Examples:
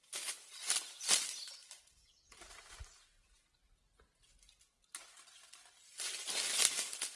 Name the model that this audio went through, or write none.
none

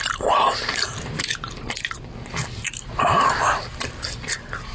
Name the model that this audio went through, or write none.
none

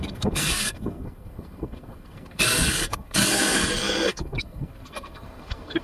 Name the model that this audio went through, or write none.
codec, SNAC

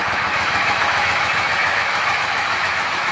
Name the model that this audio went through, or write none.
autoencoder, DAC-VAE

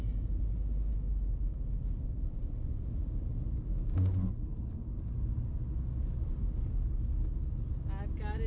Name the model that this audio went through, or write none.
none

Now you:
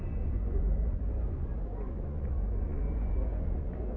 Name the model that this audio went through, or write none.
vocoder, Vocos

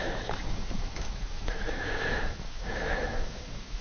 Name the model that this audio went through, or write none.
autoencoder, DAC-VAE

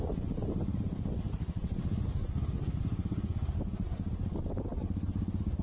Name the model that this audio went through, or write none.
none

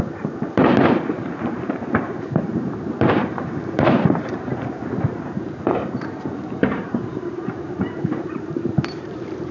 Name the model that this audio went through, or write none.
vocoder, BigVGAN v2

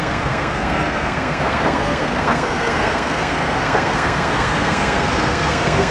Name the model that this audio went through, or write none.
codec, SNAC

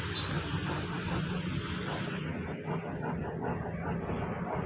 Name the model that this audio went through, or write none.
none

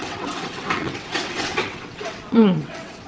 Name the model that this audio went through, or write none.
vocoder, WaveNeXt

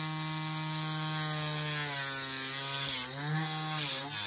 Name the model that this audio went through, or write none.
none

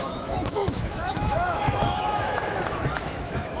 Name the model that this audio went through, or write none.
autoencoder, DAC-VAE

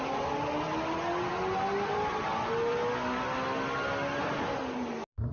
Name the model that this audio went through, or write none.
none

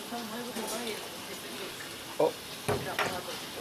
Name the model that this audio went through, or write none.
none